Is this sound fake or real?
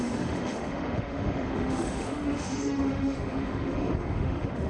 fake